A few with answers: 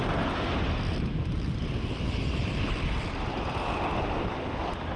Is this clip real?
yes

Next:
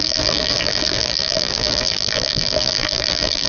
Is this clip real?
no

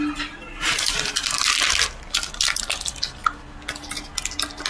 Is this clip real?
yes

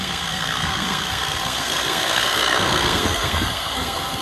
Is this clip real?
no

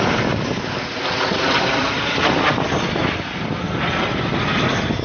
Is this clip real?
yes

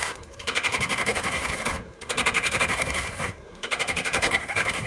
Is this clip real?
no